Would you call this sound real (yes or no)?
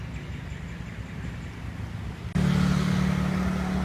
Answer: yes